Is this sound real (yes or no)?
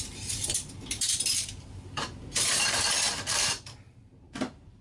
no